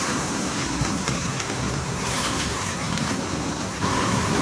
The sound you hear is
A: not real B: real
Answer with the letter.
A